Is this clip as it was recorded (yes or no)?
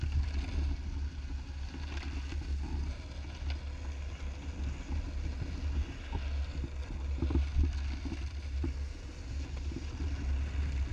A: yes